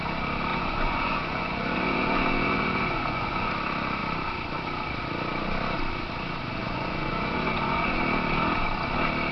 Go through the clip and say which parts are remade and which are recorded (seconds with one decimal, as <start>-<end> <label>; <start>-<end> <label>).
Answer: 0.0-0.5 recorded; 0.5-3.5 remade; 3.5-6.6 recorded; 6.6-8.0 remade; 8.0-9.3 recorded